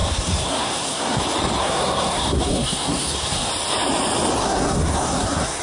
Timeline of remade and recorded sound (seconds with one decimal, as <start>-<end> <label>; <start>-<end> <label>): 0.0-1.2 remade; 1.2-1.6 recorded; 1.6-3.5 remade; 3.5-4.4 recorded; 4.4-5.6 remade